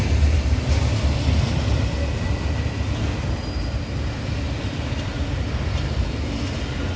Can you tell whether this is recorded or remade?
recorded